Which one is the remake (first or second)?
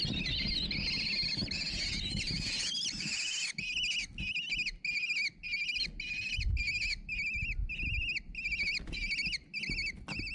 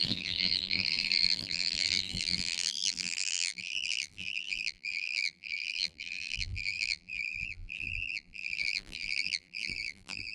second